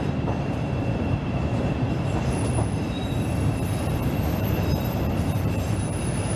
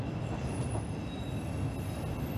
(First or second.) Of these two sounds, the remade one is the first